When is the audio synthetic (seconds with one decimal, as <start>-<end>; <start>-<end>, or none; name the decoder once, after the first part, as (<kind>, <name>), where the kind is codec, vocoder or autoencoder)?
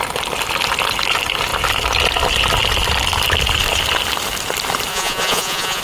4.9-5.8 (vocoder, Vocos)